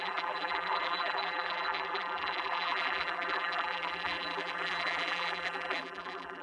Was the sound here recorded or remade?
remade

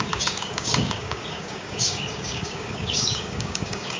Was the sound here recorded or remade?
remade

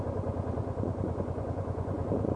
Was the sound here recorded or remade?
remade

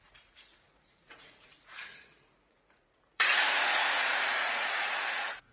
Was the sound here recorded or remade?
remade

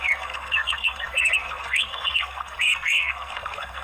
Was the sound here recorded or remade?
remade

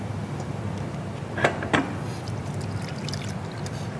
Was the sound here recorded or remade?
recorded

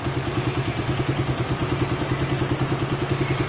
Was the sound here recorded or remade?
recorded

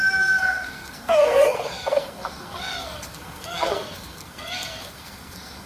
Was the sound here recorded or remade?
remade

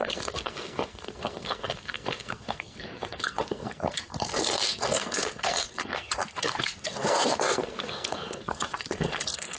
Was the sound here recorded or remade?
remade